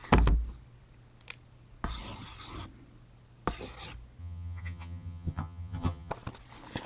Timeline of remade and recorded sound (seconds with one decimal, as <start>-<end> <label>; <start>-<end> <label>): 0.0-4.2 recorded; 4.2-6.1 remade; 6.1-6.9 recorded